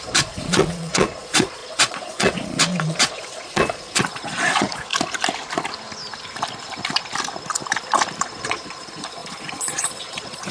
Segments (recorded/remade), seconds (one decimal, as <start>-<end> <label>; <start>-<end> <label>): 0.0-4.9 remade; 4.9-8.2 recorded; 8.2-10.5 remade